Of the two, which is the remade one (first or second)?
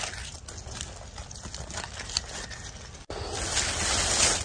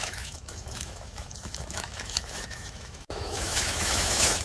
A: second